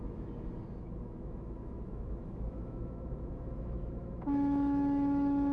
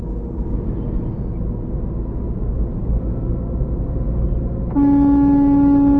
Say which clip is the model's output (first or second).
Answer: first